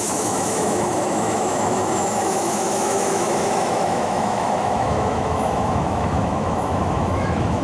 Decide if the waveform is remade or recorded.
remade